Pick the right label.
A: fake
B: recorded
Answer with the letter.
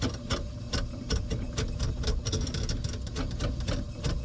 B